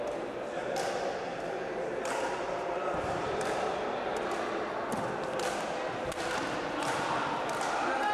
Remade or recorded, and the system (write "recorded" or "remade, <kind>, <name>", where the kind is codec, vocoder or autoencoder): recorded